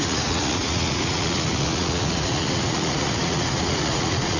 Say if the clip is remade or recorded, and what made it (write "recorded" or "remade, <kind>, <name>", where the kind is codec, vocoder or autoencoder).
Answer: remade, vocoder, Vocos